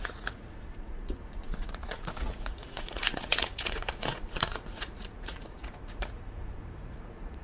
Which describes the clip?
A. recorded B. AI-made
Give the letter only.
B